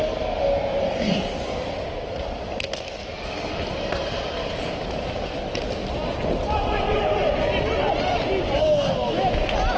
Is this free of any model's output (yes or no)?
yes